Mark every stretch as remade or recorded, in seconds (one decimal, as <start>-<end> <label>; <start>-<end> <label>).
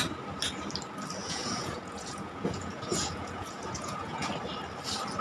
0.0-1.2 recorded; 1.2-4.3 remade; 4.3-5.2 recorded